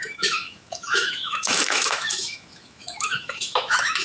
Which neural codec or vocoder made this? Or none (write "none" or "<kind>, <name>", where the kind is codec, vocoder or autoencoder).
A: autoencoder, DAC-VAE